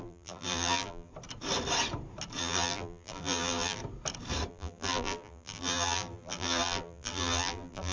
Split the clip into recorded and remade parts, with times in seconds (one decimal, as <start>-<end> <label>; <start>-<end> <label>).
0.0-1.1 remade; 1.1-2.4 recorded; 2.4-3.8 remade; 3.8-4.5 recorded; 4.5-7.9 remade

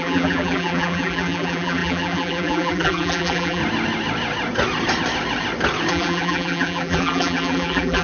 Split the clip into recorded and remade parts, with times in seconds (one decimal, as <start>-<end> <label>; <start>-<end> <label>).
0.0-3.6 remade; 3.6-5.9 recorded; 5.9-8.0 remade

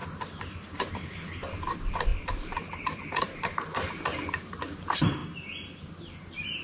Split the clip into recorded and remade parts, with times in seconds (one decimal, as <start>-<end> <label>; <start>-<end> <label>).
0.0-5.2 remade; 5.2-6.0 recorded; 6.0-6.6 remade

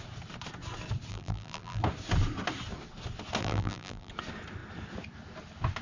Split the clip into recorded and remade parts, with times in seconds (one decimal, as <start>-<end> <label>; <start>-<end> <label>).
0.0-1.1 recorded; 1.1-1.8 remade; 1.8-3.4 recorded; 3.4-4.1 remade; 4.1-5.8 recorded

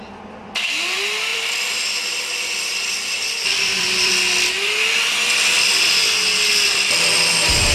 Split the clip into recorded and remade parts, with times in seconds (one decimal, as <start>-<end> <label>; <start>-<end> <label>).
0.0-1.3 recorded; 1.3-4.1 remade; 4.1-7.7 recorded

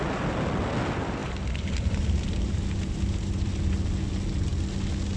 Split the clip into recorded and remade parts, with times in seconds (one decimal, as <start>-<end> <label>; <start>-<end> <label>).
0.0-1.2 recorded; 1.2-3.5 remade; 3.5-5.2 recorded

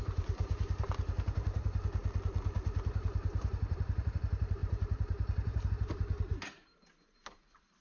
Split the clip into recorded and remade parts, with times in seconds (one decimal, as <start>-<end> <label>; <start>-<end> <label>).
0.0-2.0 remade; 2.0-2.9 recorded; 2.9-7.8 remade

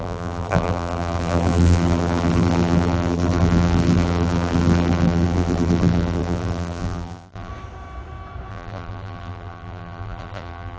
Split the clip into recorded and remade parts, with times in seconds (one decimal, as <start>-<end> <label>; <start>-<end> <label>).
0.0-7.5 remade; 7.5-8.5 recorded; 8.5-10.8 remade